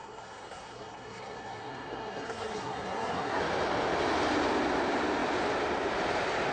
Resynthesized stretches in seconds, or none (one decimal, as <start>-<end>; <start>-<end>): 0.0-3.4